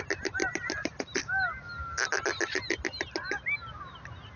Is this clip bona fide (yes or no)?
yes